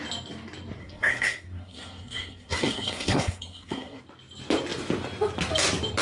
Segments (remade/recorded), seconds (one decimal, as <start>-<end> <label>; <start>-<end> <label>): 0.0-0.8 recorded; 0.8-4.0 remade; 4.0-6.0 recorded